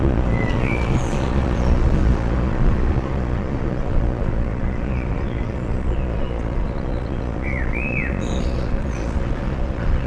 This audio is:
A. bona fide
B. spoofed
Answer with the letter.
B